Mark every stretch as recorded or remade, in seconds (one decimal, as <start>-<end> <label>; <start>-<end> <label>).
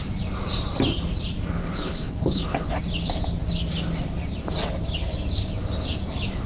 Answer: 0.0-1.6 recorded; 1.6-2.7 remade; 2.7-6.5 recorded